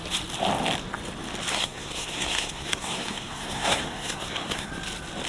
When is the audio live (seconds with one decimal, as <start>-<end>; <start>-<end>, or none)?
0.0-1.5; 4.7-5.3